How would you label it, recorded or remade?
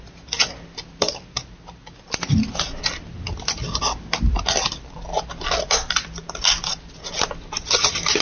recorded